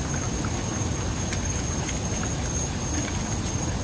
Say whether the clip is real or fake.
real